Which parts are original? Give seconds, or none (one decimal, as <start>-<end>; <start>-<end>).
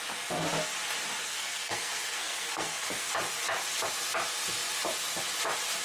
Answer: 0.0-1.2; 3.1-5.8